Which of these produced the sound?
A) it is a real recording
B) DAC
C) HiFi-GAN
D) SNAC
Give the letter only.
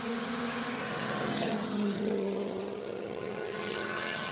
C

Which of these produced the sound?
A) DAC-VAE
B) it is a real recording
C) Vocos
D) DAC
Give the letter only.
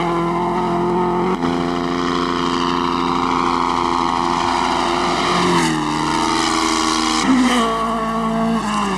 B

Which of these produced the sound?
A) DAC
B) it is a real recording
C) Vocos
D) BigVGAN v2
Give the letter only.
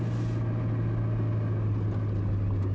B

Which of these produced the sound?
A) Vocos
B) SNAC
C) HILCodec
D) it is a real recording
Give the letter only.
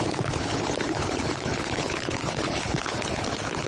C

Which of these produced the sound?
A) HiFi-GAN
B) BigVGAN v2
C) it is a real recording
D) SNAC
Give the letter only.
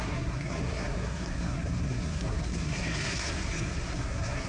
D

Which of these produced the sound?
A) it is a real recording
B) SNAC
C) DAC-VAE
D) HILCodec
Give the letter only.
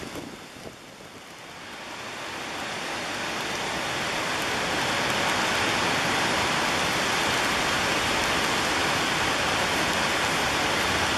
A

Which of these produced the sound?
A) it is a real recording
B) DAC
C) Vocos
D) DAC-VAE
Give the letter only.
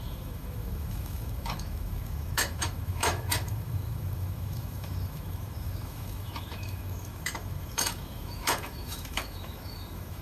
D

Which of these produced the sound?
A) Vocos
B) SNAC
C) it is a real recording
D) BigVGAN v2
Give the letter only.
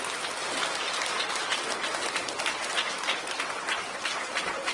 C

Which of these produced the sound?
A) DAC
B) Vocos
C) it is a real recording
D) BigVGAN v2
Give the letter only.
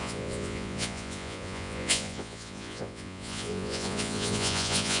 B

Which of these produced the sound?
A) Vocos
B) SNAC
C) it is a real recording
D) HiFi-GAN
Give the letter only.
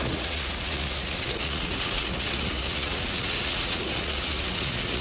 A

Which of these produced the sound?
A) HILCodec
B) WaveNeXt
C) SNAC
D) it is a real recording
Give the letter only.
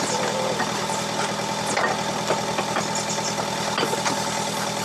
D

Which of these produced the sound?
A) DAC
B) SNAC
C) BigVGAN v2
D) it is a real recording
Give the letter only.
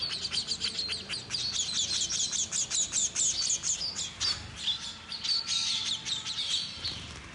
D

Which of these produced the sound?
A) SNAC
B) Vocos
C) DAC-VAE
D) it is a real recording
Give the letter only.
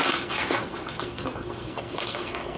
A